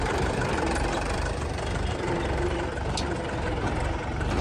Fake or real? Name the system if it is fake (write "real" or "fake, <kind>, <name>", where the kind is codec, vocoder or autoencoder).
fake, vocoder, BigVGAN v2